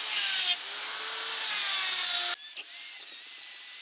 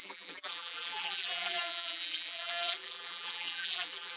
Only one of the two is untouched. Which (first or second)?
first